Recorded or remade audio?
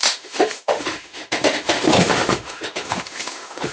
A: remade